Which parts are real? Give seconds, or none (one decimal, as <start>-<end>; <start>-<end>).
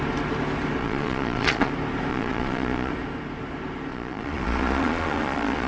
0.0-0.8; 1.7-2.1; 2.9-3.9